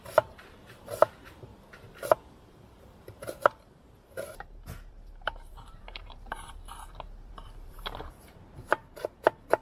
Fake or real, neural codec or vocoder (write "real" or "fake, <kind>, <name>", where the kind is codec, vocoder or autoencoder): fake, vocoder, BigVGAN v2